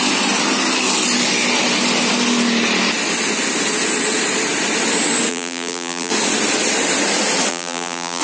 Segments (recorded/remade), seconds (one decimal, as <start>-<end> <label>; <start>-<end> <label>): 0.0-5.3 recorded; 5.3-6.1 remade; 6.1-7.5 recorded; 7.5-8.2 remade